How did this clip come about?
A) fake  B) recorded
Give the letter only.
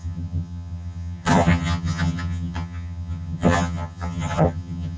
A